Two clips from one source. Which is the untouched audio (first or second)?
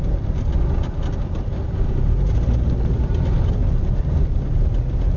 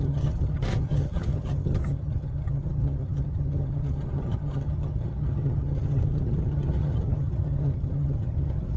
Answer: first